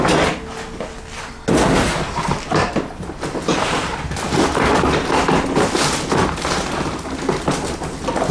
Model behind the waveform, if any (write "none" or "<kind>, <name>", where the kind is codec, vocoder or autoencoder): none